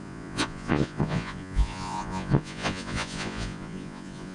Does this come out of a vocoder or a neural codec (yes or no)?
yes